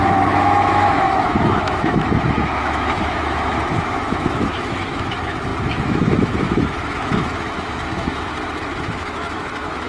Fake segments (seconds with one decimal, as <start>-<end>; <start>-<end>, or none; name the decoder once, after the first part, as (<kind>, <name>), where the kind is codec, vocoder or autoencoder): 0.0-8.3 (autoencoder, DAC-VAE); 8.8-9.9

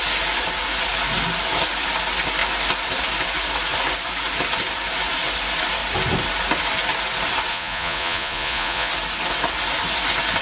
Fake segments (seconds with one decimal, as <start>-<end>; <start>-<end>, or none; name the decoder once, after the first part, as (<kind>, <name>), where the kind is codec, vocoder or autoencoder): 7.5-8.9 (vocoder, Vocos)

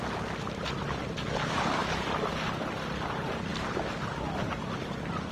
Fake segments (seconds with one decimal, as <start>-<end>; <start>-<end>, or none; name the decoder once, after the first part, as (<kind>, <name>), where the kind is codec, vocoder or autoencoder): 3.5-5.3 (vocoder, BigVGAN v2)

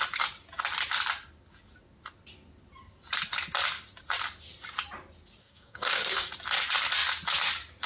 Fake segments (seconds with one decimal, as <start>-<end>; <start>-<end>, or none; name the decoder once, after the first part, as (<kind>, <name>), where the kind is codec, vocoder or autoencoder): 5.4-6.3 (codec, DAC)

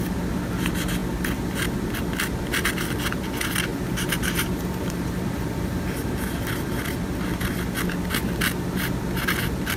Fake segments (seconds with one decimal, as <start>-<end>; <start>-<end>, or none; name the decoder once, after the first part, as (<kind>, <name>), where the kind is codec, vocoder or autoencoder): 3.7-6.4 (vocoder, BigVGAN v2)

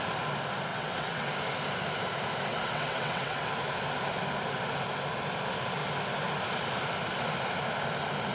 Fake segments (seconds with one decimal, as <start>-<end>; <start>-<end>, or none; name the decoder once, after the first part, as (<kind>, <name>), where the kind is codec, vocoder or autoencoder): 0.7-1.3 (vocoder, WaveNeXt); 2.5-3.5

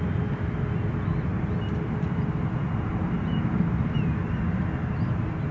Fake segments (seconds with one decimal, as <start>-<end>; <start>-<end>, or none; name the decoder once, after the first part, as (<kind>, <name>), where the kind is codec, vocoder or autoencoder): none

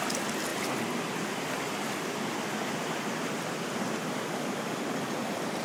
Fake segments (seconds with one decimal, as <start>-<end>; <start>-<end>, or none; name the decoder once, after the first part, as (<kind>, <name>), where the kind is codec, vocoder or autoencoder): none